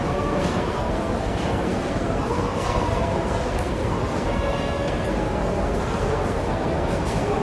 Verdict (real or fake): fake